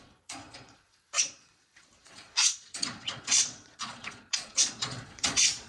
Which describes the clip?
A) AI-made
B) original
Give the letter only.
A